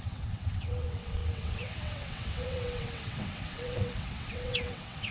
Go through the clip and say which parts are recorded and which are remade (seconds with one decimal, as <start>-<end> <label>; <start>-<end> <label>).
0.0-5.1 remade